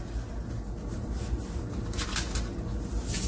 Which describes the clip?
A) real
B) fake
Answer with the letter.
A